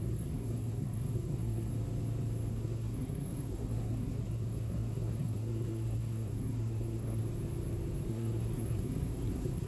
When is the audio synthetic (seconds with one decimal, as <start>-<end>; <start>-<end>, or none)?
0.0-1.7; 2.5-7.2; 8.1-9.7

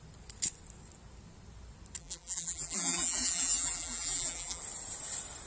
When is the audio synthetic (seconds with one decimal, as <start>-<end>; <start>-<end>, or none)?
2.0-4.6

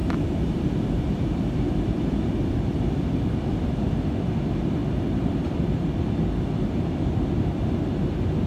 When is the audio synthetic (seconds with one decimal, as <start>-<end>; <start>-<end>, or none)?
0.0-3.0; 4.8-7.6

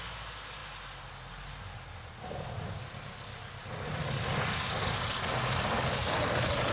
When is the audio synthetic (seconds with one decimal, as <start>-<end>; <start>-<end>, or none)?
none

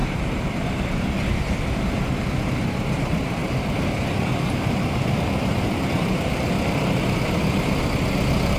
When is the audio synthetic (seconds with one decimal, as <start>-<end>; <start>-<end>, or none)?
0.0-0.6; 3.4-7.8

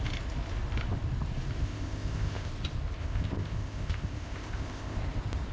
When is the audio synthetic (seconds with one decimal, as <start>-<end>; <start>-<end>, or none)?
1.6-2.5; 3.0-5.0

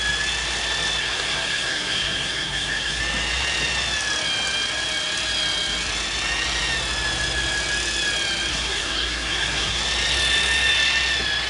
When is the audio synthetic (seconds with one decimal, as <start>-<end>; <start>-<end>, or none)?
1.0-3.0; 8.5-9.8